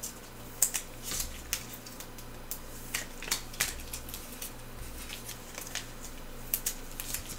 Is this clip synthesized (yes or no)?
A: no